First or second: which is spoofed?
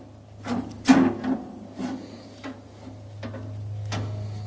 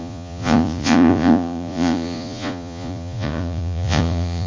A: second